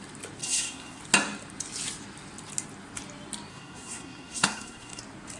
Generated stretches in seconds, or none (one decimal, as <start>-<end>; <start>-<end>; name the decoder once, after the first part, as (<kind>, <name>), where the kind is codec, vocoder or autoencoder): 0.4-1.0 (codec, SNAC); 3.5-5.0